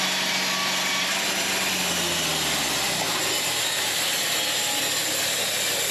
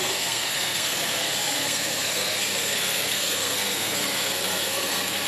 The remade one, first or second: second